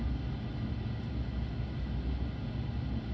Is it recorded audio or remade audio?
recorded